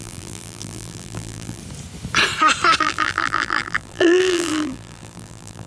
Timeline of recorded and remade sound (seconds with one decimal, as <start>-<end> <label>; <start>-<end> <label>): 0.0-1.6 remade; 1.6-2.8 recorded; 2.8-5.7 remade